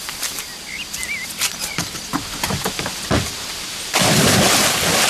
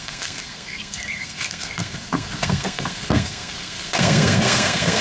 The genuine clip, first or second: first